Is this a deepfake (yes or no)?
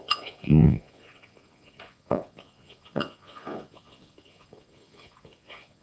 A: yes